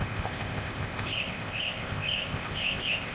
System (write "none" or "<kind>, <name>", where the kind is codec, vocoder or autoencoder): codec, ZipCodec